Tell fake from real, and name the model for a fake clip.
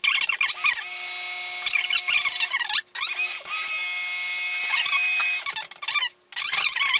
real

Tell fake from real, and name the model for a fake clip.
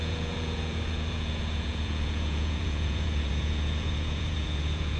fake, vocoder, Vocos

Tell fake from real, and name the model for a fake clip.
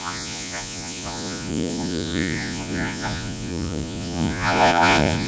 fake, vocoder, Vocos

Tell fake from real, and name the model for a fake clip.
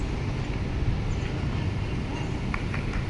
real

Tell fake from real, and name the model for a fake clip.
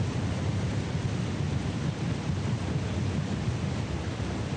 real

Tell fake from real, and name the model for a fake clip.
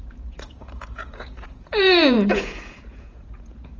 fake, vocoder, Vocos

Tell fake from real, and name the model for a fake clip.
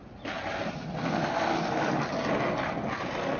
real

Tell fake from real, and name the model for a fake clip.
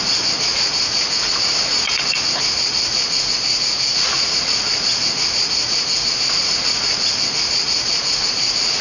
fake, vocoder, Vocos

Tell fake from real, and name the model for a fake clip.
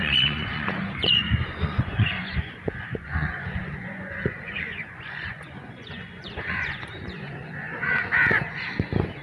fake, vocoder, Vocos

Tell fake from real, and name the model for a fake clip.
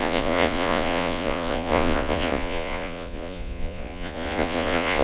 fake, vocoder, Vocos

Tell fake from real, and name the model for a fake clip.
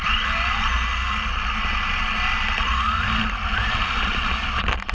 real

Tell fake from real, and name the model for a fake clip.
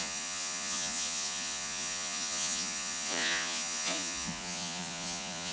fake, vocoder, Vocos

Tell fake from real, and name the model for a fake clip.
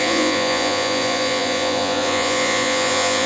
fake, vocoder, Vocos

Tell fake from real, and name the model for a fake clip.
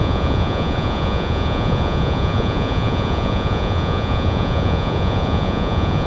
fake, vocoder, Vocos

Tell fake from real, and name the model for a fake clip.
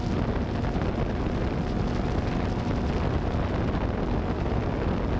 real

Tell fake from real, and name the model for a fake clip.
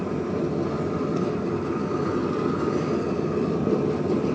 real